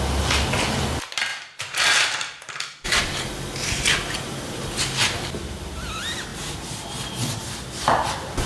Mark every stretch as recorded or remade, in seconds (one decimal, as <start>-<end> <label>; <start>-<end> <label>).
0.0-1.3 recorded; 1.3-3.0 remade; 3.0-8.5 recorded